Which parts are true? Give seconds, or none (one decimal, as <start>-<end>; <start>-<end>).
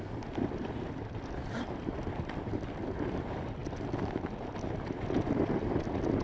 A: 0.0-6.2